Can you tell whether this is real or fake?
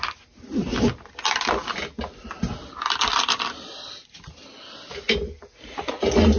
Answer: real